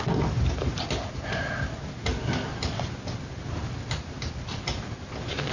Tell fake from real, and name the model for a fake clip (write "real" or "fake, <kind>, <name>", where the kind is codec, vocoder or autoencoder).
real